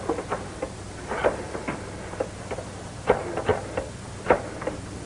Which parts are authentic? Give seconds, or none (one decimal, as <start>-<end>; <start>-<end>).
0.0-5.1